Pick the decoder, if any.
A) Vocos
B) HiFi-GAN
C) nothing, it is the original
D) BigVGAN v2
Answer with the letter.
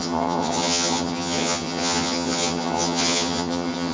B